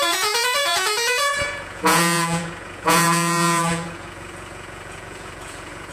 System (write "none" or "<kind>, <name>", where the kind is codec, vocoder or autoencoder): vocoder, Vocos